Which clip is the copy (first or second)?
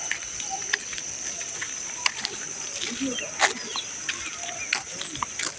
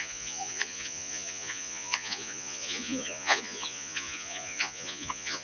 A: second